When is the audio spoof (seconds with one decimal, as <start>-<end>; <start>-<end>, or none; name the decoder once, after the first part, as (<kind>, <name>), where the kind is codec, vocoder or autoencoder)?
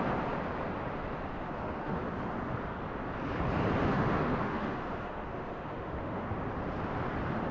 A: 1.3-2.0 (autoencoder, DAC-VAE); 3.9-6.3